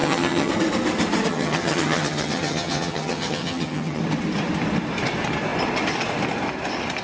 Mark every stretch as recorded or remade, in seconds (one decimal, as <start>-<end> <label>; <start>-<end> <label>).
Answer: 0.0-0.5 remade; 0.5-1.3 recorded; 1.3-4.0 remade; 4.0-7.0 recorded